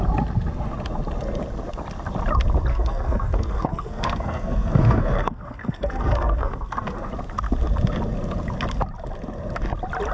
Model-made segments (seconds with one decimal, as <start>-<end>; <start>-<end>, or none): 2.7-7.1